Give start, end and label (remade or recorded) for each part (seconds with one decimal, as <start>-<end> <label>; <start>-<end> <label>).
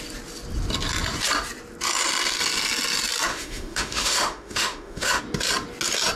0.0-3.3 recorded; 3.3-5.2 remade; 5.2-6.1 recorded